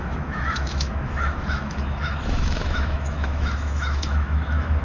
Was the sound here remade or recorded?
remade